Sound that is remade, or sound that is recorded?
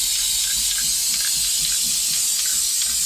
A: recorded